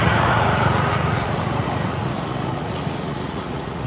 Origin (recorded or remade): remade